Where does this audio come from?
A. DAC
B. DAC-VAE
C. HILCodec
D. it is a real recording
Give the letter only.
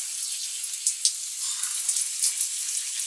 D